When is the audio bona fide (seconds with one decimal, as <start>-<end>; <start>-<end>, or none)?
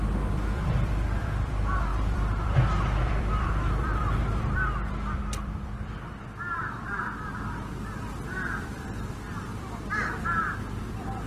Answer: none